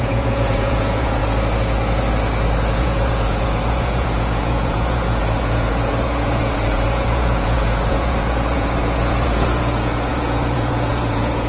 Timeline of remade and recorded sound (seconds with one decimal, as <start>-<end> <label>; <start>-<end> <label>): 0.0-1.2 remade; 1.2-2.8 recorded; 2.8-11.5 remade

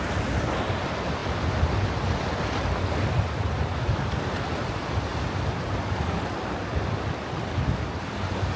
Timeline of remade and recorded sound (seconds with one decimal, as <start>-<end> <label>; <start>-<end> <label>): 0.0-8.6 recorded

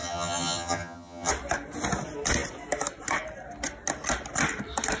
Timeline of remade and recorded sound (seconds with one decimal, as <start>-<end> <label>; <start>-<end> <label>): 0.0-1.3 remade; 1.3-5.0 recorded